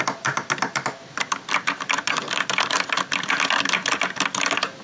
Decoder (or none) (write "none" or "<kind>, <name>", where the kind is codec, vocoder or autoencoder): none